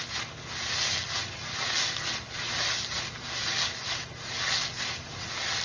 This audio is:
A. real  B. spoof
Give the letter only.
A